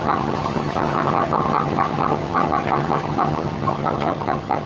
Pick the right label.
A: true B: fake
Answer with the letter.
B